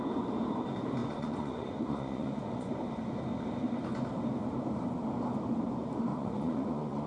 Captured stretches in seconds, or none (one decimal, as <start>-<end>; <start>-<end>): 0.0-1.0; 2.7-6.1